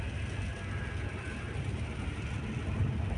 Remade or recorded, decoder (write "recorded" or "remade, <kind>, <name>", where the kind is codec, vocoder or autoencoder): recorded